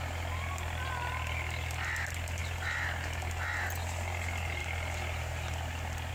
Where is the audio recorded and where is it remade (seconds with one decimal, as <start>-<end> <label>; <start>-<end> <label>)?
0.0-6.1 recorded